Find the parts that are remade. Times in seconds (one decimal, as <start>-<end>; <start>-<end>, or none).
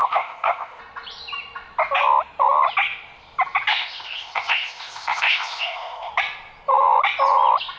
0.0-0.8; 3.7-6.1